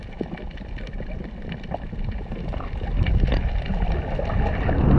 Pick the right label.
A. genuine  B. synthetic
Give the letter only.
A